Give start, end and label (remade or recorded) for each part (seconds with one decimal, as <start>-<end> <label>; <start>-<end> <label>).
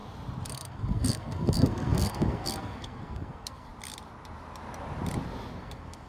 0.0-0.5 recorded; 0.5-3.7 remade; 3.7-5.6 recorded; 5.6-6.1 remade